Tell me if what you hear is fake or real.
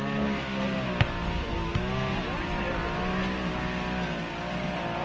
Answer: real